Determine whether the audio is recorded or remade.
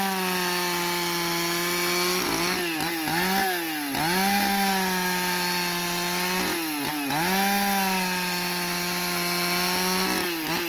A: recorded